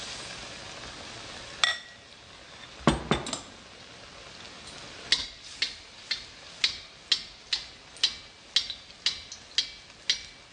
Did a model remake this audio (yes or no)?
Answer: no